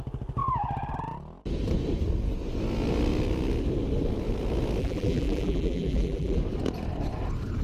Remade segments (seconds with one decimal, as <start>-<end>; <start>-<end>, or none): 4.8-6.4